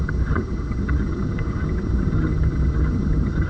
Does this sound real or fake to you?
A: fake